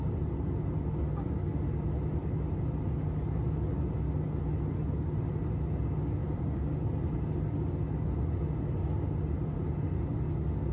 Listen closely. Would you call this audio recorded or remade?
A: recorded